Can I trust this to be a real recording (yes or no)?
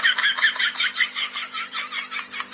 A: yes